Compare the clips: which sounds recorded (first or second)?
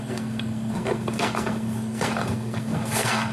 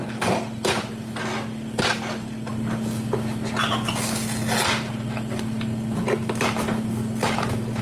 second